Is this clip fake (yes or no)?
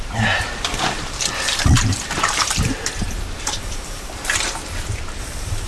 yes